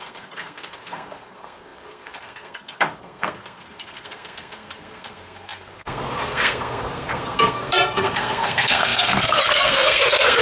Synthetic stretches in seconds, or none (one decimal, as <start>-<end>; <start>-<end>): 0.0-10.4